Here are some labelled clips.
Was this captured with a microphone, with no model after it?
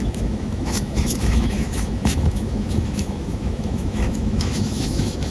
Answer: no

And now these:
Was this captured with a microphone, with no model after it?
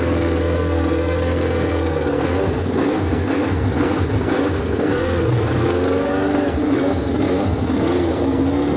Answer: no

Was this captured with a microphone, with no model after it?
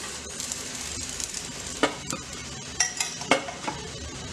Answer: no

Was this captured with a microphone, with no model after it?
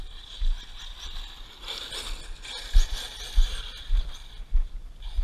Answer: yes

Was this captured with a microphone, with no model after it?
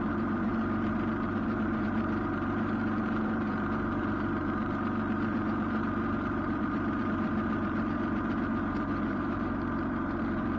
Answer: no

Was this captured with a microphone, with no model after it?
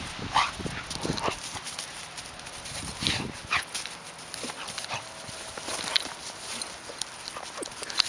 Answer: yes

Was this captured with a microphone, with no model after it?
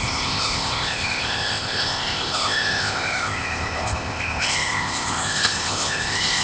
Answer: no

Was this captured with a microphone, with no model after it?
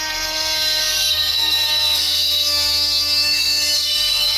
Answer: no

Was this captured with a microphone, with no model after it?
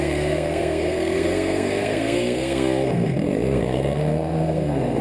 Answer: no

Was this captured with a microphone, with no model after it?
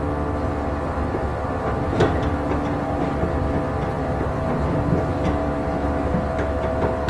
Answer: yes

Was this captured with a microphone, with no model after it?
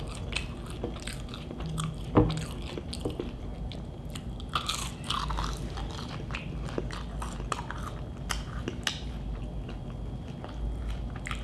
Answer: yes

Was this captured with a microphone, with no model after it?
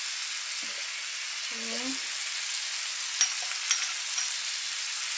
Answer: yes